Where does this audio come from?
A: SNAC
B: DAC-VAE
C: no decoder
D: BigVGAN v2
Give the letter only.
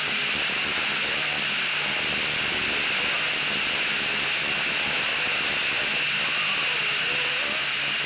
C